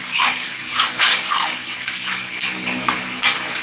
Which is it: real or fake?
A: fake